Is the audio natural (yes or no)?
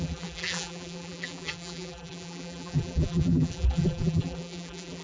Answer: no